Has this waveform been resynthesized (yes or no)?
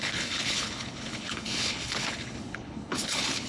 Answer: yes